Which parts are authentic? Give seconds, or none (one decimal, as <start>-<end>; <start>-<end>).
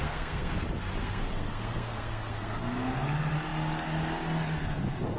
0.5-1.0; 2.6-5.2